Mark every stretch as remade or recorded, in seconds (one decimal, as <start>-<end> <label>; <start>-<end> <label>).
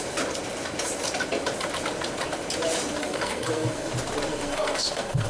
0.0-3.0 recorded; 3.0-3.9 remade; 3.9-4.3 recorded; 4.3-5.3 remade